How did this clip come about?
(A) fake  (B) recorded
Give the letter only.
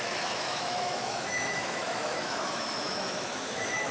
A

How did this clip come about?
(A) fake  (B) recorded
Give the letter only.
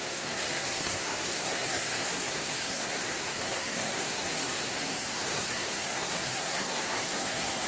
A